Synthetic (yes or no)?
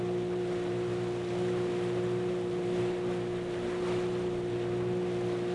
no